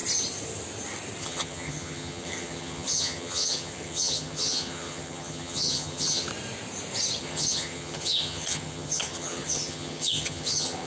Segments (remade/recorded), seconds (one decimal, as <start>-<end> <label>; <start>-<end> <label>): 0.0-1.2 recorded; 1.2-6.3 remade; 6.3-7.2 recorded; 7.2-10.9 remade

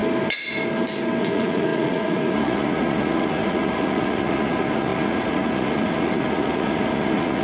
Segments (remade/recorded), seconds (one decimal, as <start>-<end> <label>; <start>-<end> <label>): 0.0-1.2 recorded; 1.2-7.4 remade

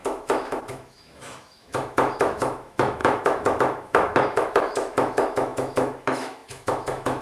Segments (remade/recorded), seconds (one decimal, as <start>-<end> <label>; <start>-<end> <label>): 0.0-7.2 remade

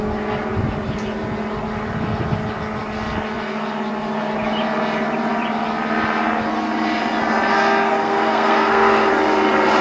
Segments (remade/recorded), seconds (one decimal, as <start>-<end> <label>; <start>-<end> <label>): 0.0-7.5 recorded; 7.5-9.1 remade; 9.1-9.8 recorded

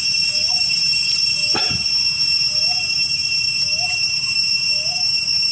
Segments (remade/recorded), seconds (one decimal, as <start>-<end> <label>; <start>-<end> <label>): 0.0-5.5 recorded

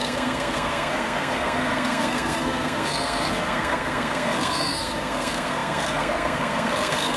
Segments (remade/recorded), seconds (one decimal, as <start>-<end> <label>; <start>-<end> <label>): 0.0-7.2 remade